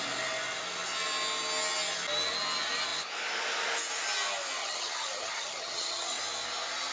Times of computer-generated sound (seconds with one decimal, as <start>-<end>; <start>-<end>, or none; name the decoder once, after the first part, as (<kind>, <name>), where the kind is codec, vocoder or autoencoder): 4.6-6.2 (vocoder, HiFi-GAN)